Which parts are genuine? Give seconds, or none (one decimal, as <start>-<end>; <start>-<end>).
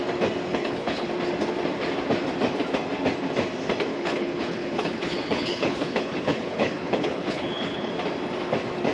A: 0.0-0.5; 1.1-3.9; 7.9-8.9